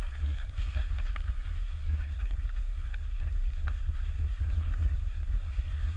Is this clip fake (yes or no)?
yes